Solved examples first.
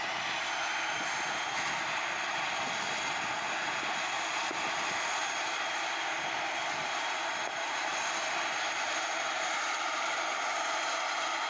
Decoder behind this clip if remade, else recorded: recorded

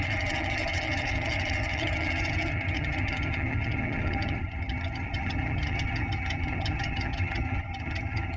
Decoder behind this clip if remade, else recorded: remade, vocoder, HiFi-GAN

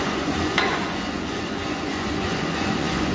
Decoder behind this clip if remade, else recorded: remade, vocoder, Vocos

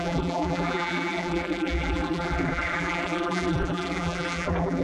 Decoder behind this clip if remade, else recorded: remade, vocoder, BigVGAN v2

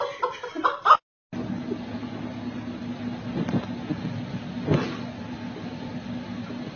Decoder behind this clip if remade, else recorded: recorded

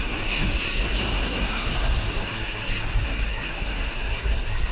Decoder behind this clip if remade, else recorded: remade, codec, SNAC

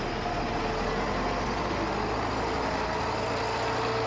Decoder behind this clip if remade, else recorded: recorded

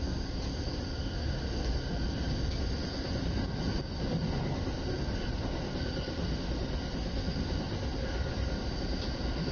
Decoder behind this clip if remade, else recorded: recorded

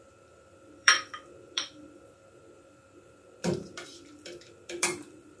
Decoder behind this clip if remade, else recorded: remade, vocoder, BigVGAN v2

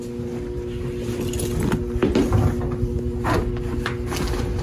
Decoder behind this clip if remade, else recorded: recorded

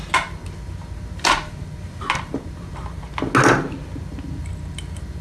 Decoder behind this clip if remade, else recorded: recorded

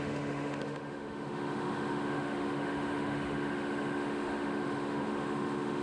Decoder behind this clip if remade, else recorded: remade, autoencoder, DAC-VAE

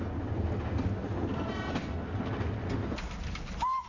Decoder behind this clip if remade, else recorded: recorded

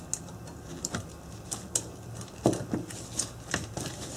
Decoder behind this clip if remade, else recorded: recorded